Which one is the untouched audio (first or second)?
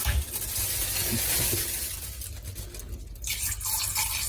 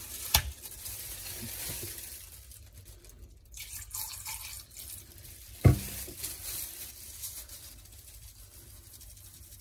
first